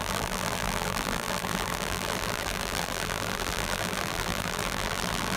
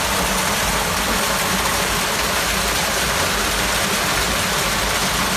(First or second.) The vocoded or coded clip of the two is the first